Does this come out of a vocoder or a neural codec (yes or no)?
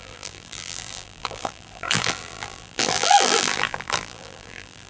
yes